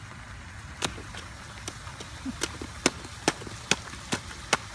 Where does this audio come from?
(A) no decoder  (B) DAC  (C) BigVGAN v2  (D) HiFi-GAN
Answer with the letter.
A